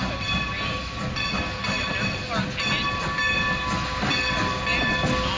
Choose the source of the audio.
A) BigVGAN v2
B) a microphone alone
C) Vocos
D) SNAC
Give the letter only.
B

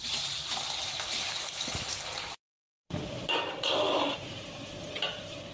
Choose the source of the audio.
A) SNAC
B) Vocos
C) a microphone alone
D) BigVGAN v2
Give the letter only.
D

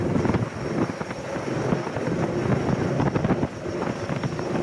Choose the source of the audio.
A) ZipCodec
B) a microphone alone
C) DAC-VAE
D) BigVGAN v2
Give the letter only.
B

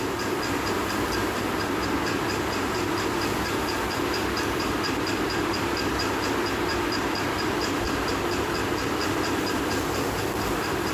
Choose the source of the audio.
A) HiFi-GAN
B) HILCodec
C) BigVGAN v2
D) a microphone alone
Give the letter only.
C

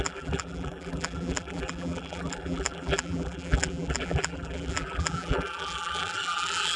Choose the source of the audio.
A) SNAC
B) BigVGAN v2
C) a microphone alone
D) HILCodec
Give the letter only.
B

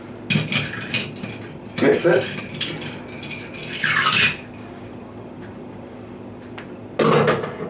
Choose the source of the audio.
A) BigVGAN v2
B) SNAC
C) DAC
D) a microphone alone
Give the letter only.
D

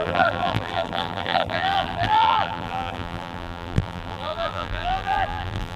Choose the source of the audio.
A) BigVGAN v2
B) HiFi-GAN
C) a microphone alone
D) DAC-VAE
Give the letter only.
A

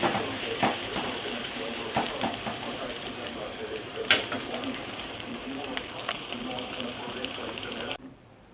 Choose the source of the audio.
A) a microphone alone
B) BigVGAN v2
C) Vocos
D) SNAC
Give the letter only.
B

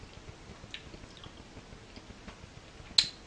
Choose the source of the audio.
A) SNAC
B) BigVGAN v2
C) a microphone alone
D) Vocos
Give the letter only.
C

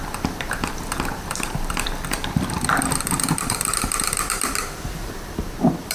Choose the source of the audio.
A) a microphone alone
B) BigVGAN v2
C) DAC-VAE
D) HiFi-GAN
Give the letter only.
B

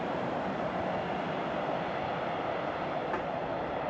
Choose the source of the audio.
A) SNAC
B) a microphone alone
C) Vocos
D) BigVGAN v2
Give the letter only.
D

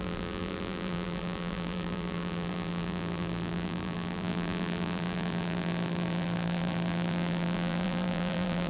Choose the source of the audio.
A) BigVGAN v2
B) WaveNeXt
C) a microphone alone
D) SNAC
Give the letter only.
A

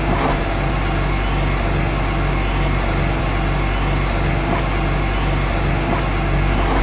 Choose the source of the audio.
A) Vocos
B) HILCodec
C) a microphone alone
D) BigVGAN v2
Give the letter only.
C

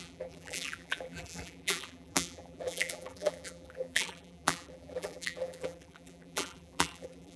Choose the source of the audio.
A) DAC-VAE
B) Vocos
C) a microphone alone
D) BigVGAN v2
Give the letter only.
D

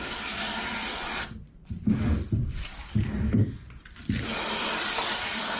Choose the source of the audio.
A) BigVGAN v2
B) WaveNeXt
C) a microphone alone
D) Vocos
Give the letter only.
A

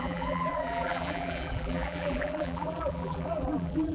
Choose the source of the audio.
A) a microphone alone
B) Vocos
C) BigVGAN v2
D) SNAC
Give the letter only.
C